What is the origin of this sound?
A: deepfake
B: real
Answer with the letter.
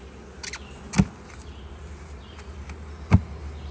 B